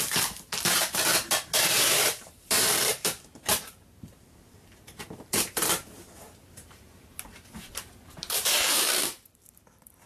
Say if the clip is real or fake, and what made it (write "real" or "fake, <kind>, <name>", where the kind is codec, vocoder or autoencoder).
fake, vocoder, BigVGAN v2